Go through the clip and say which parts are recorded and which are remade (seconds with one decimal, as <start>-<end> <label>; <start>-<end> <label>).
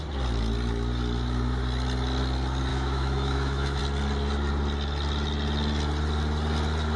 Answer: 0.0-2.7 recorded; 2.7-3.8 remade; 3.8-7.0 recorded